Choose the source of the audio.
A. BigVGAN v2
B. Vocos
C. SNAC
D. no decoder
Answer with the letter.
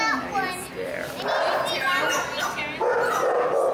D